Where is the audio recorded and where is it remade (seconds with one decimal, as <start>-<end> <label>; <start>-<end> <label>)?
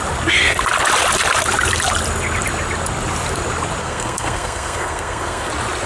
0.0-3.8 recorded; 3.8-5.5 remade; 5.5-5.9 recorded